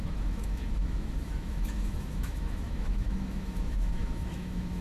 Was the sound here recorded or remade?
remade